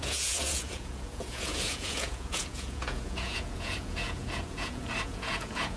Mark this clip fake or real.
fake